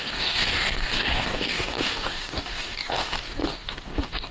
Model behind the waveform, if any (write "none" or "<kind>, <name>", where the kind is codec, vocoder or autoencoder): codec, DAC